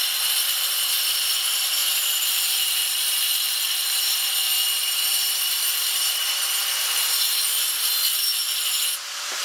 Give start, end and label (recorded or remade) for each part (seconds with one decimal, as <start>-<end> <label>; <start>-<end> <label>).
0.0-8.2 remade; 8.2-9.4 recorded